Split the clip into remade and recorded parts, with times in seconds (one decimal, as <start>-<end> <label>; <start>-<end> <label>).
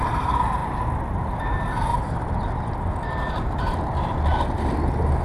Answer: 0.0-5.2 recorded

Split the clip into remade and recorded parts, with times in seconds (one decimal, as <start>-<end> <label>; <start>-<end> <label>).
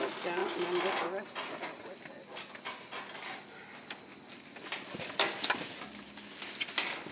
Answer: 0.0-7.1 recorded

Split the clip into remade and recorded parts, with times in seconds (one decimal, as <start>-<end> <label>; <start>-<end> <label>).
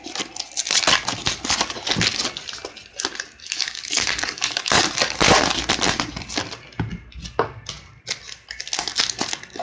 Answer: 0.0-3.4 recorded; 3.4-4.8 remade; 4.8-9.6 recorded